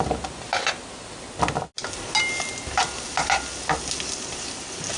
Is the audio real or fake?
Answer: real